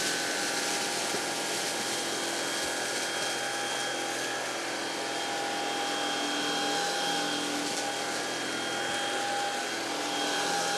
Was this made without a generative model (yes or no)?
yes